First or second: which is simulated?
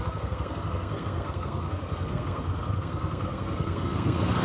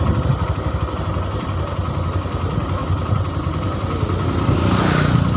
first